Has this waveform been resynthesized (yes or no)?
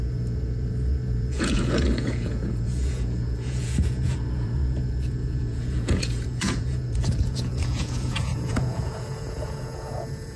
yes